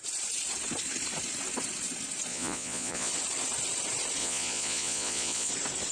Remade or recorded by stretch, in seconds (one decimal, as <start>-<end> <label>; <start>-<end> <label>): 0.0-2.3 recorded; 2.3-3.1 remade; 3.1-4.2 recorded; 4.2-5.5 remade; 5.5-5.9 recorded